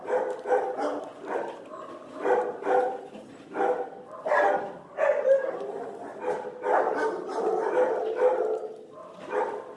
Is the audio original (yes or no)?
yes